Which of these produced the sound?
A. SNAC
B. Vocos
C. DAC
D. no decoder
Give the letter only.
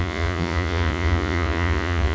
B